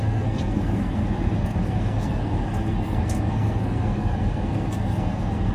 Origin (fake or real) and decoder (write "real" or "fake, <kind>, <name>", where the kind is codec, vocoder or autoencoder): fake, codec, SNAC